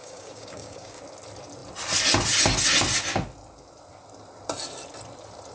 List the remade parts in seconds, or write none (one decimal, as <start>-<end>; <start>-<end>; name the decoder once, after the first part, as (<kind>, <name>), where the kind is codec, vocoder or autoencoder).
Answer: 0.0-1.0 (codec, DAC)